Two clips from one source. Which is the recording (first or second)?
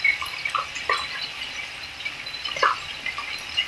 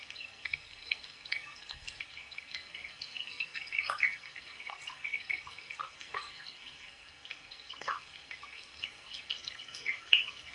first